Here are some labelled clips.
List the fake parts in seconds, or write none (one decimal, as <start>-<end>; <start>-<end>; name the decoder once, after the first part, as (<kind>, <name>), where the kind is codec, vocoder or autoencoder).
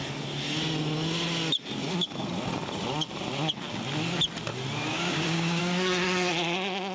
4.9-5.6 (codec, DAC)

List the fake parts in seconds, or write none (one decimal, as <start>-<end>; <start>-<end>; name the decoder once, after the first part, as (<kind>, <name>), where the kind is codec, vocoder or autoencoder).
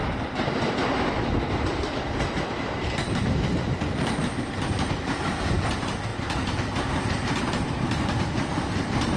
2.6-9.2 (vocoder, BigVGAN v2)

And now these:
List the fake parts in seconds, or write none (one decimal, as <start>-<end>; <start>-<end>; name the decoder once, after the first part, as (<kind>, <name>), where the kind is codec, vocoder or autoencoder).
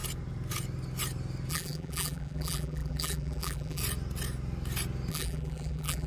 1.5-3.8 (vocoder, BigVGAN v2); 5.1-6.1